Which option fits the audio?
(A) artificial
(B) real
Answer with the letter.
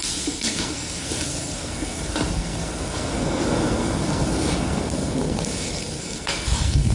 A